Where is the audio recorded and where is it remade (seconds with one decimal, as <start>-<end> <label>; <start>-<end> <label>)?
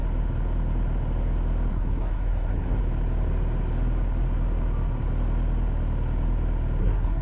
0.0-1.7 recorded; 1.7-2.8 remade; 2.8-6.8 recorded; 6.8-7.2 remade